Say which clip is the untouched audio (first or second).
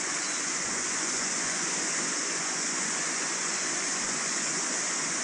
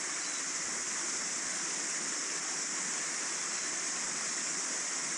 second